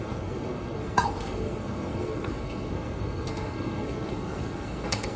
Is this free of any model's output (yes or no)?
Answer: no